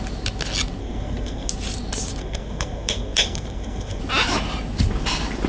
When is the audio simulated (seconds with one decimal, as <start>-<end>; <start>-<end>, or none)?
0.8-1.5; 2.2-4.0